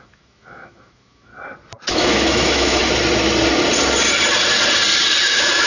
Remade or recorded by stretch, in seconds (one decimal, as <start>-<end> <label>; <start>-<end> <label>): 0.0-1.3 remade; 1.3-1.9 recorded; 1.9-2.8 remade; 2.8-5.2 recorded; 5.2-5.7 remade